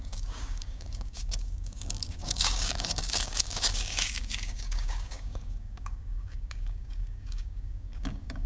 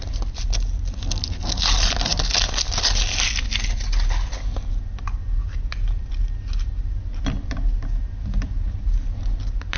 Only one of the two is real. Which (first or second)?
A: second